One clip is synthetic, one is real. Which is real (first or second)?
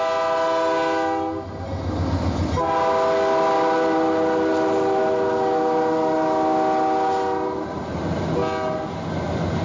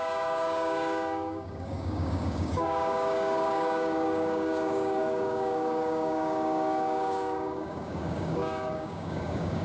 first